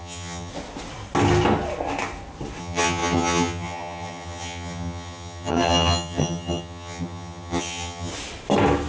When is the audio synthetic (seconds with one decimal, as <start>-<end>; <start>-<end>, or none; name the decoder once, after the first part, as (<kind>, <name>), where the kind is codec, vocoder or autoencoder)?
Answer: 0.0-0.5 (vocoder, HiFi-GAN); 2.6-8.1